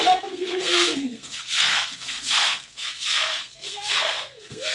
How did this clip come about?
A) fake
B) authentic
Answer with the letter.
A